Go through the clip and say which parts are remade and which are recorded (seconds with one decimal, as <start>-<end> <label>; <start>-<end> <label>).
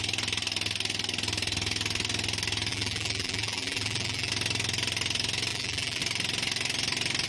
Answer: 0.0-2.7 recorded; 2.7-4.3 remade; 4.3-5.5 recorded; 5.5-6.0 remade; 6.0-7.3 recorded